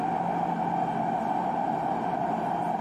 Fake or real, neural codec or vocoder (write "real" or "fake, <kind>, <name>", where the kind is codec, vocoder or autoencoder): real